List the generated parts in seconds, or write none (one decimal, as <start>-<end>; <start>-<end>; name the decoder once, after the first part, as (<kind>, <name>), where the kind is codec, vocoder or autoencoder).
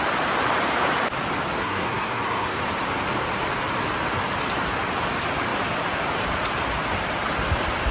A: 1.6-2.6 (codec, SNAC)